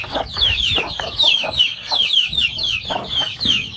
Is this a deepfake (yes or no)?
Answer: yes